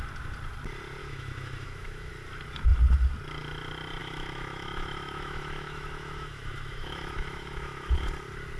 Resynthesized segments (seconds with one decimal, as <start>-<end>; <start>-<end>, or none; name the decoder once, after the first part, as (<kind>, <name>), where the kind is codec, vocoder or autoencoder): 1.0-2.1 (autoencoder, DAC-VAE); 4.0-8.1